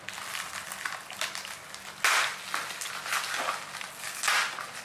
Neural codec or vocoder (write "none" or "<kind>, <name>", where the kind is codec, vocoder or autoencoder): none